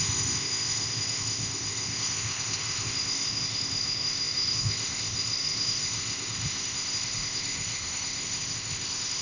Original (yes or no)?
no